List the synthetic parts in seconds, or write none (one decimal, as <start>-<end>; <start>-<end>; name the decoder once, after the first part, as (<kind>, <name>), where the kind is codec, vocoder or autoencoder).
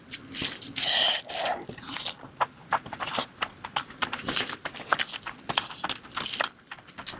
1.5-2.0 (vocoder, BigVGAN v2); 2.6-5.0